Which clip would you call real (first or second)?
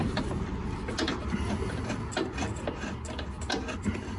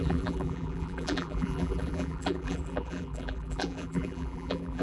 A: first